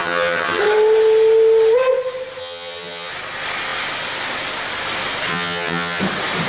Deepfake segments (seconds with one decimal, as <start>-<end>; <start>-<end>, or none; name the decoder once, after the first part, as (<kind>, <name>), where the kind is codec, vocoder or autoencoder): 0.0-0.6 (vocoder, HiFi-GAN); 2.4-3.1; 5.3-6.0